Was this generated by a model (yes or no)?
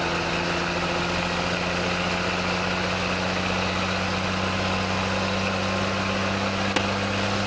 no